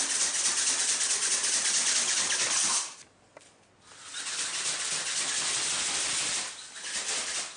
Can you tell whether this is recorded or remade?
recorded